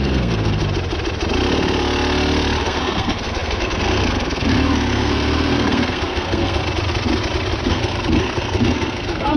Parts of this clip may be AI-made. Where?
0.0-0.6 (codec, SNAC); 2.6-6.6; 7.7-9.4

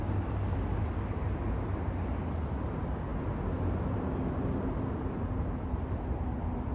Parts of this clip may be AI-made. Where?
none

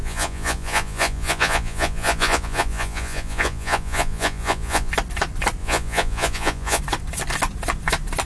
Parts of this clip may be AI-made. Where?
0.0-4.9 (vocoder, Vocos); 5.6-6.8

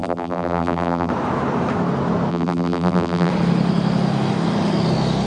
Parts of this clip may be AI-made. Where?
0.0-1.1 (vocoder, BigVGAN v2); 2.3-3.3

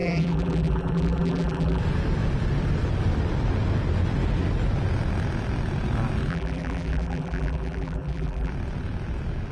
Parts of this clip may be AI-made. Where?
0.0-1.8 (vocoder, BigVGAN v2); 6.3-8.5